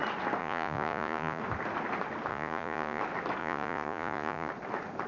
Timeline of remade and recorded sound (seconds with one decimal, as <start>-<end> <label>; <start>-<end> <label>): 0.0-0.4 recorded; 0.4-1.4 remade; 1.4-2.3 recorded; 2.3-3.0 remade; 3.0-3.4 recorded; 3.4-4.5 remade; 4.5-5.1 recorded